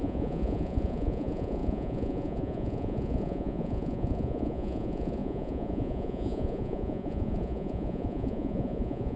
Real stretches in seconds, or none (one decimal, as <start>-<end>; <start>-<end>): none